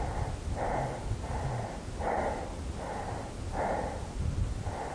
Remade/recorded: recorded